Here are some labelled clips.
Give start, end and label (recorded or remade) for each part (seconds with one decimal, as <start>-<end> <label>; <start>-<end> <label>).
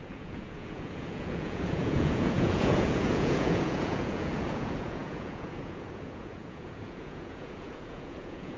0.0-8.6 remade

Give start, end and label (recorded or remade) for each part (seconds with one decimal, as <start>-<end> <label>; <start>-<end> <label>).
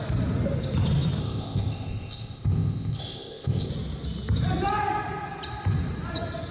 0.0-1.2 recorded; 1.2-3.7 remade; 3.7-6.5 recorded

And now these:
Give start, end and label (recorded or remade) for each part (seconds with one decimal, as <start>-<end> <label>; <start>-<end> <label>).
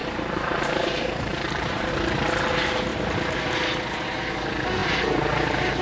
0.0-1.9 remade; 1.9-2.9 recorded; 2.9-4.2 remade; 4.2-4.8 recorded; 4.8-5.8 remade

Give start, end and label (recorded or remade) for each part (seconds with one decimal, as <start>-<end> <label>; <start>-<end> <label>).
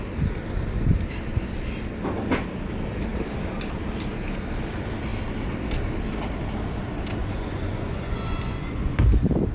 0.0-7.2 recorded; 7.2-8.9 remade; 8.9-9.5 recorded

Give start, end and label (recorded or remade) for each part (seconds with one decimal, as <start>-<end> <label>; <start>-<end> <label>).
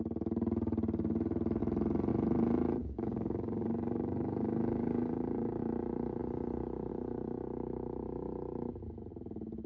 0.0-2.8 recorded; 2.8-5.6 remade; 5.6-9.7 recorded